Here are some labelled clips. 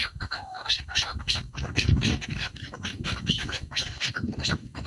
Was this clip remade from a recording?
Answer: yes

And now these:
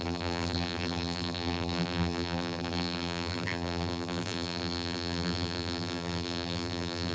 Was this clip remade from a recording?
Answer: yes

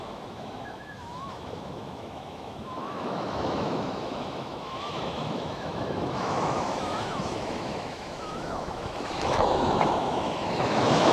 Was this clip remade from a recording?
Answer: yes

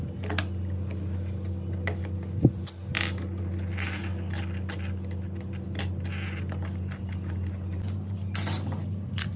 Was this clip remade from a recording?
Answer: no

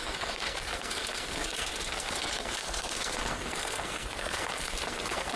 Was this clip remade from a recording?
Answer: yes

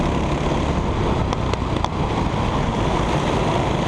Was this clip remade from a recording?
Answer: no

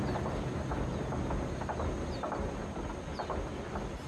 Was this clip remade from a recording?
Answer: no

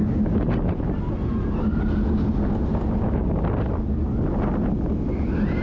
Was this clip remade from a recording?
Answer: no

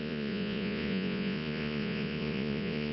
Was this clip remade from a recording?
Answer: yes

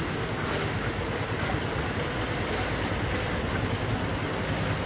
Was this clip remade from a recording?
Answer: no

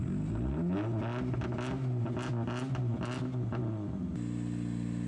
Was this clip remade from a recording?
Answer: no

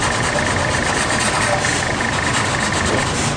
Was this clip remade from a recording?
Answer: no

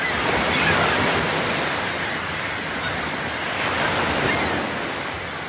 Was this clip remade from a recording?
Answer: yes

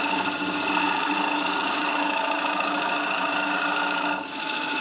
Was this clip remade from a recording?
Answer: yes